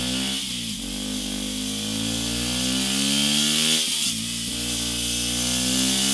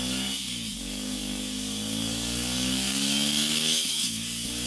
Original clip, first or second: first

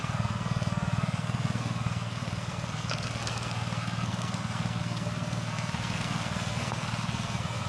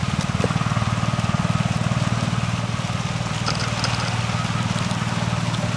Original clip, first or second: second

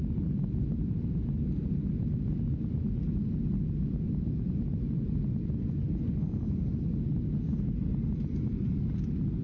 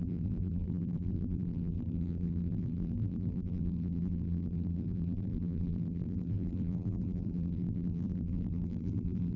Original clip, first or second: first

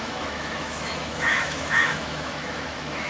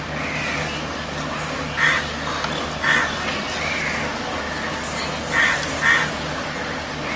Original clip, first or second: second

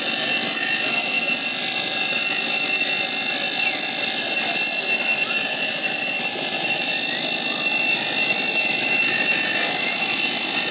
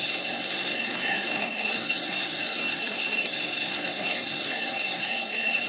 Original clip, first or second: first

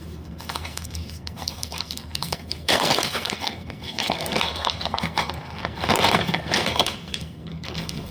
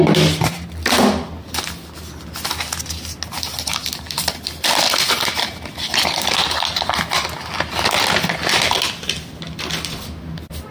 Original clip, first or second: second